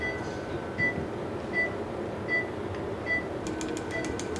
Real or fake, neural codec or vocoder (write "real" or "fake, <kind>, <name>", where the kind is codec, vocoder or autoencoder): real